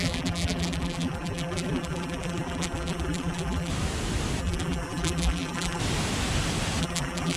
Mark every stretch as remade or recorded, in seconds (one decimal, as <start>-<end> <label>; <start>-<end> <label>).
0.0-3.7 remade; 3.7-4.4 recorded; 4.4-5.8 remade; 5.8-6.8 recorded; 6.8-7.4 remade